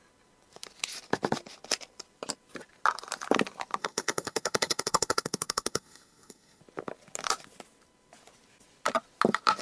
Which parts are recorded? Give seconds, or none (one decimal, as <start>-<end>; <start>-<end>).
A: 0.0-3.8; 6.6-9.6